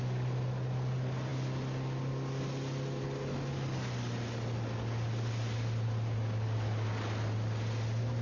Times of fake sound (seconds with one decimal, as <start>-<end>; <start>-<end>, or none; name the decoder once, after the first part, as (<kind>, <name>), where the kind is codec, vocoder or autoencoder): none